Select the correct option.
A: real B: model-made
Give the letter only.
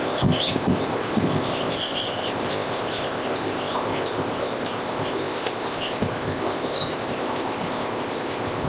B